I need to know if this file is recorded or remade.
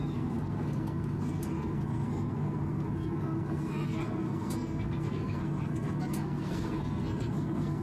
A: remade